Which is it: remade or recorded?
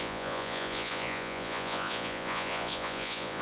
remade